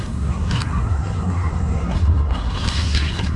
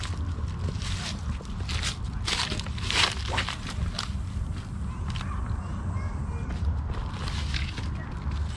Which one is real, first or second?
second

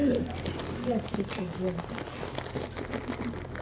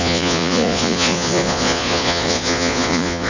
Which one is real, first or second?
first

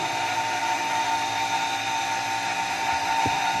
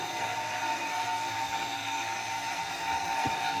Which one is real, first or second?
first